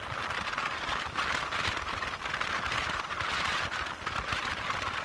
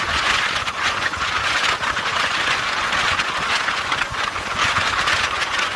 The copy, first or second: second